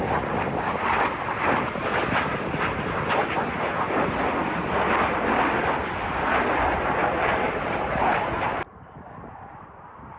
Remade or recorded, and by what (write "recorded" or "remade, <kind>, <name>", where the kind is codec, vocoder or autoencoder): recorded